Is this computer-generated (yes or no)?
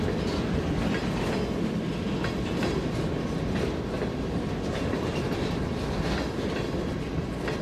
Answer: no